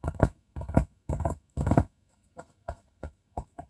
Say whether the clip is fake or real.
fake